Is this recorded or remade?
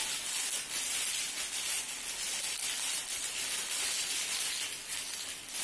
recorded